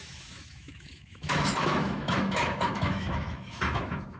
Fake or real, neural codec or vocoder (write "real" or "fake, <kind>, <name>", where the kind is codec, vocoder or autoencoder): fake, autoencoder, DAC-VAE